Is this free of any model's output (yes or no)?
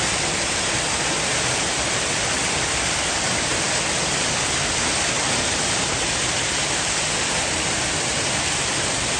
no